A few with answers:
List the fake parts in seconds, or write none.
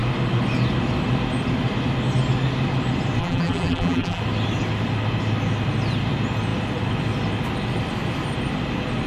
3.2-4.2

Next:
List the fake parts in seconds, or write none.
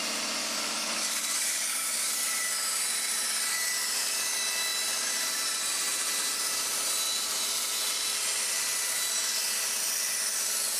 0.4-2.1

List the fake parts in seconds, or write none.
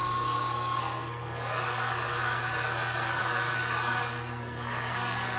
0.0-5.4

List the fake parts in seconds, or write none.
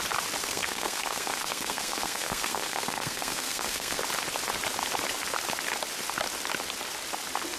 0.4-4.0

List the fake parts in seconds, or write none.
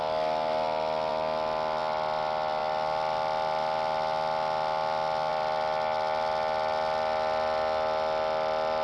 none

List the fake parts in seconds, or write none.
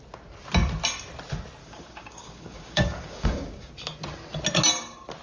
1.6-3.7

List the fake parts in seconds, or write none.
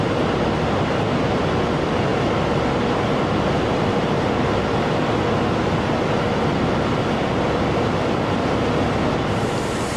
none